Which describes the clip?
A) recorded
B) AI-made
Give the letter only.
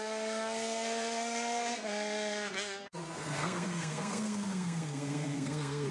B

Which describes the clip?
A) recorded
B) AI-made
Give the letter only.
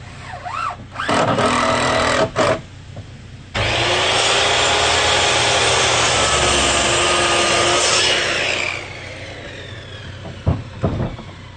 A